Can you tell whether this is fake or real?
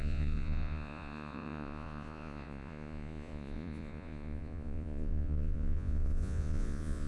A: fake